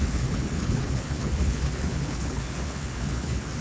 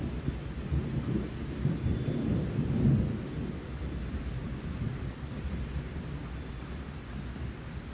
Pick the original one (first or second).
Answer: second